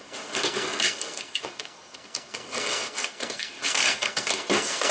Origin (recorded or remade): remade